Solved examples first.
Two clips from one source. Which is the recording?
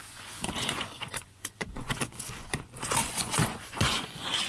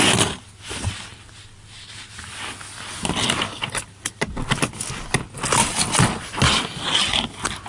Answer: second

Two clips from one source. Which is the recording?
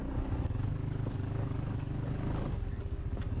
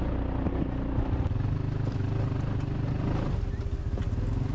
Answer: second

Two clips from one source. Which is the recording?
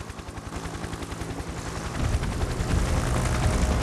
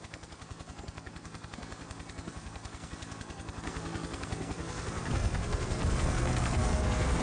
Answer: first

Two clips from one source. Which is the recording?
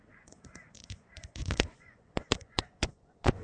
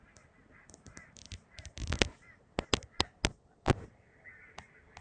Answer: second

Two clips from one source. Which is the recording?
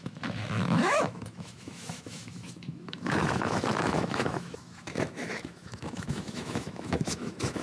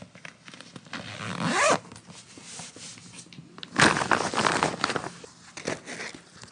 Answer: second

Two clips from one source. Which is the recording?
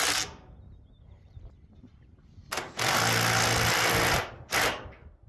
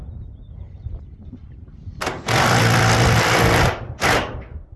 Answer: first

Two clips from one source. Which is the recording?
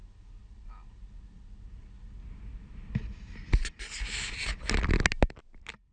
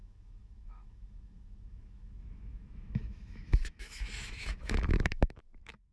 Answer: first